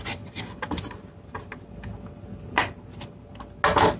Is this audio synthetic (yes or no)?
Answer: no